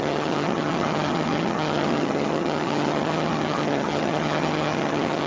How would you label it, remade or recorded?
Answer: remade